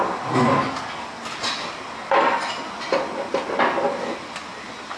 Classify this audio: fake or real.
real